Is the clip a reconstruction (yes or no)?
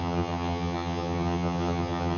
yes